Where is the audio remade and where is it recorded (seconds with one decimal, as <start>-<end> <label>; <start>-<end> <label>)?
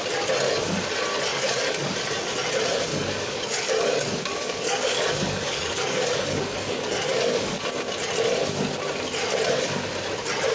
0.0-1.3 recorded; 1.3-1.9 remade; 1.9-2.9 recorded; 2.9-7.6 remade; 7.6-10.5 recorded